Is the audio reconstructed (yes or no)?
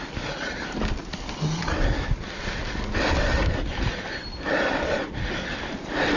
no